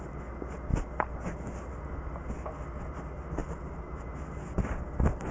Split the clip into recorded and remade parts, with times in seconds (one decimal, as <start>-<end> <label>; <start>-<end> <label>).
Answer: 0.0-3.4 recorded; 3.4-4.2 remade; 4.2-5.3 recorded